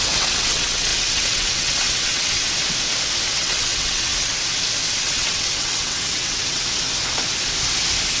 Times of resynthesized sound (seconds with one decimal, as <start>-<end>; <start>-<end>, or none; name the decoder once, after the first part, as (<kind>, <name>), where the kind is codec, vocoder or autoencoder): 0.0-2.6 (vocoder, WaveNeXt); 3.3-4.3; 4.9-6.6